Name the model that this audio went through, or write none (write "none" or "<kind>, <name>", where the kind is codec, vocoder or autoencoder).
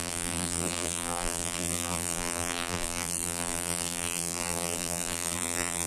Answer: vocoder, BigVGAN v2